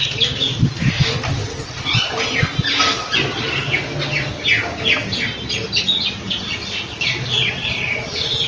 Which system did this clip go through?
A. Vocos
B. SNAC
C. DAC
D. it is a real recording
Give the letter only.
D